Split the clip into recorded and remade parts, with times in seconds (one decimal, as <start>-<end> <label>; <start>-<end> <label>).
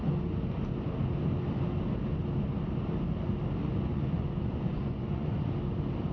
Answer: 0.0-3.6 recorded; 3.6-5.4 remade; 5.4-6.1 recorded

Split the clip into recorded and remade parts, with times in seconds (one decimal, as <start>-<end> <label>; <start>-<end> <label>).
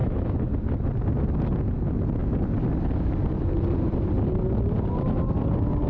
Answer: 0.0-0.5 remade; 0.5-5.9 recorded